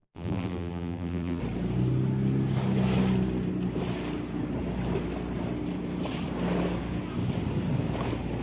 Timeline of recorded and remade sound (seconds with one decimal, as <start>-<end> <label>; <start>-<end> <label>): 0.0-1.4 remade; 1.4-8.4 recorded